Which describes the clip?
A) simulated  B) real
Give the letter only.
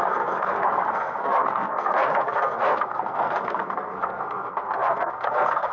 A